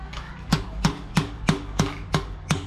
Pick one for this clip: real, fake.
fake